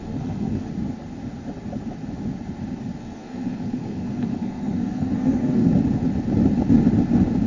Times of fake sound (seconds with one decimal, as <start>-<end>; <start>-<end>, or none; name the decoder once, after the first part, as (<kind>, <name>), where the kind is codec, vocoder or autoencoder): 0.0-0.7 (codec, SNAC); 3.0-5.7